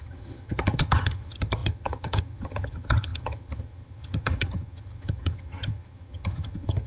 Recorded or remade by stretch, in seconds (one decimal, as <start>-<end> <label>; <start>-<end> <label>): 0.0-6.9 remade